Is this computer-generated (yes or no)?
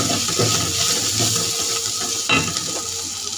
no